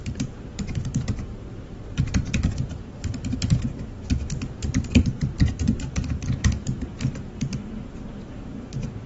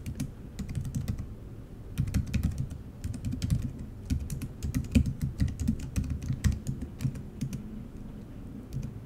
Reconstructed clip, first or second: first